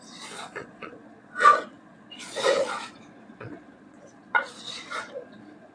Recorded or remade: remade